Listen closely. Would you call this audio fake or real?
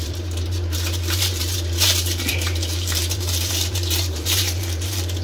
fake